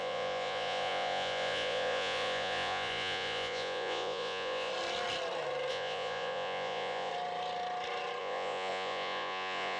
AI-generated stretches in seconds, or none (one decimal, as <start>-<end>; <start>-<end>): 0.0-4.7; 5.7-7.1; 8.2-9.8